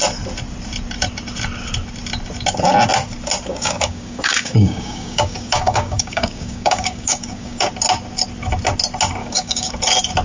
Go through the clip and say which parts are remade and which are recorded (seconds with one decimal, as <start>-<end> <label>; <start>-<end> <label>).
0.0-3.5 recorded; 3.5-7.7 remade; 7.7-9.2 recorded; 9.2-9.7 remade; 9.7-10.2 recorded